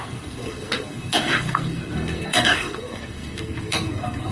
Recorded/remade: remade